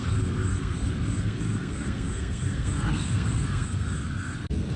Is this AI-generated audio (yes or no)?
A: yes